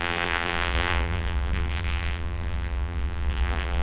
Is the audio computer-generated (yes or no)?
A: yes